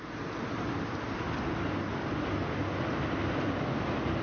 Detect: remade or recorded recorded